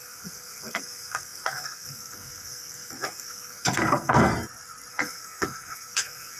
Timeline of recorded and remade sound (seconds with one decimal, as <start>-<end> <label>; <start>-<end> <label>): 0.0-4.3 remade; 4.3-4.9 recorded; 4.9-6.4 remade